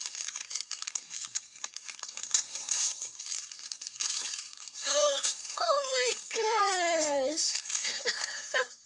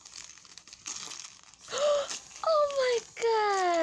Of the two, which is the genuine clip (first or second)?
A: second